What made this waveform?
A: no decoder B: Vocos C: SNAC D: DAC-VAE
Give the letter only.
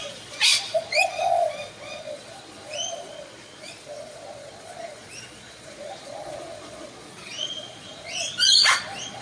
B